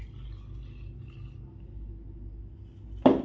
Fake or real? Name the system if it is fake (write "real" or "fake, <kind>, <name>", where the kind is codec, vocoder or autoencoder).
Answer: real